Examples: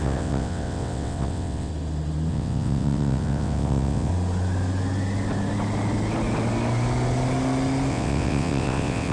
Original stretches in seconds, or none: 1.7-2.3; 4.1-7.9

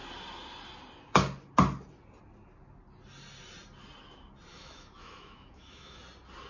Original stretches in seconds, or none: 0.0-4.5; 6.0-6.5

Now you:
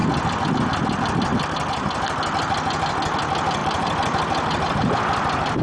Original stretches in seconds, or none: 0.0-1.3; 2.0-3.6

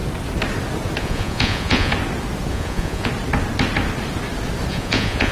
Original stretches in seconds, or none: 0.0-1.0; 1.9-2.5; 3.1-4.7